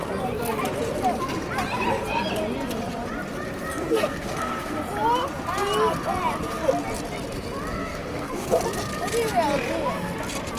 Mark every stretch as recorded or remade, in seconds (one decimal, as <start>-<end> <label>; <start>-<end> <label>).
0.0-3.7 recorded; 3.7-4.8 remade; 4.8-7.8 recorded; 7.8-8.6 remade; 8.6-10.6 recorded